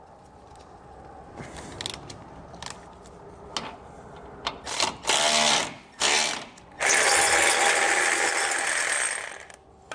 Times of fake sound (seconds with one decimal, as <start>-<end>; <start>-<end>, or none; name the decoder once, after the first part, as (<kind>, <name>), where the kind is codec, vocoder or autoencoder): none